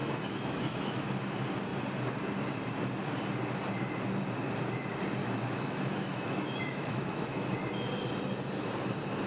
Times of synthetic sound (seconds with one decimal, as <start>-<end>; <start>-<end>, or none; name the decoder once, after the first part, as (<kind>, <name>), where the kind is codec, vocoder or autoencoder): 0.0-1.0 (autoencoder, DAC-VAE); 5.2-7.5